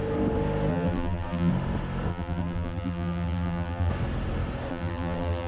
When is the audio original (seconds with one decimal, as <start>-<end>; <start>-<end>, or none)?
0.0-0.7; 1.5-2.1; 3.9-4.7